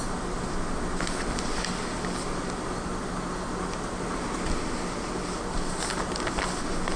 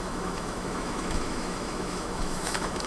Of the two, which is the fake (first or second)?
second